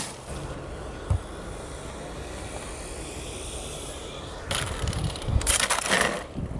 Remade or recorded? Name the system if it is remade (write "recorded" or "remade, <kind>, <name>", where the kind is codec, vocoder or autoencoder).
recorded